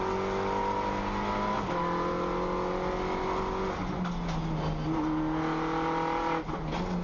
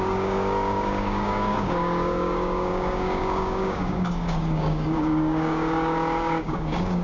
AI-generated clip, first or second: second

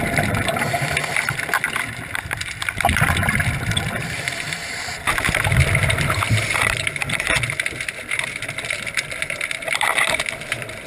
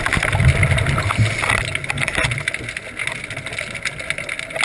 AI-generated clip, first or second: first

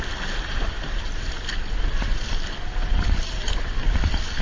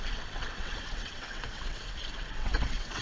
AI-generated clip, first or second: second